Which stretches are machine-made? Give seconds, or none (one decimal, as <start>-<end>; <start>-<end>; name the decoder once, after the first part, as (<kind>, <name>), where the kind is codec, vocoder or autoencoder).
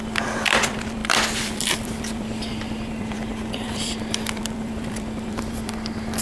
0.0-6.2 (vocoder, BigVGAN v2)